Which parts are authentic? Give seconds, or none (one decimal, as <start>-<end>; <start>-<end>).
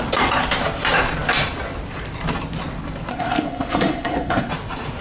0.0-3.1; 4.5-5.0